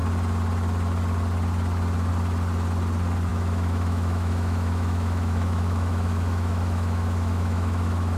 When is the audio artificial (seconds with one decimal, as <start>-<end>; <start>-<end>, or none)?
3.3-8.2